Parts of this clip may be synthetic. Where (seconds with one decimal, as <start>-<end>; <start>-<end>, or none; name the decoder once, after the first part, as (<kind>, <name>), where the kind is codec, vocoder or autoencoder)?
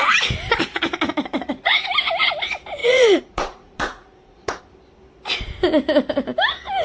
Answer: 1.3-1.9 (vocoder, Vocos); 2.8-4.6